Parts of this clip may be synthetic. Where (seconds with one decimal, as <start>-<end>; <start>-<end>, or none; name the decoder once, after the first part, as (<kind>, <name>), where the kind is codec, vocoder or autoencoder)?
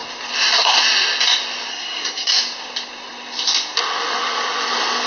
1.7-2.3 (codec, SNAC)